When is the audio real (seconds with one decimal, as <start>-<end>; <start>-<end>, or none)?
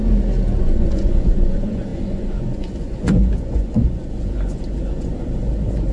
0.0-0.6